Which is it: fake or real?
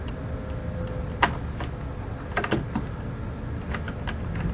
real